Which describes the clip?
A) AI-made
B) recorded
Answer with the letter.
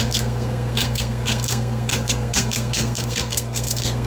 A